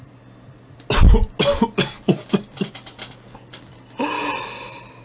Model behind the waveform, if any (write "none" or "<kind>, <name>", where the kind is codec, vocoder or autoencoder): none